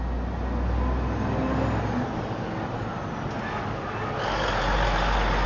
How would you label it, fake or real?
real